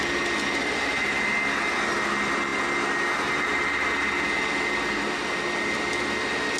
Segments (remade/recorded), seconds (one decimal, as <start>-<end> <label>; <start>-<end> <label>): 0.0-0.6 recorded; 0.6-1.3 remade; 1.3-6.6 recorded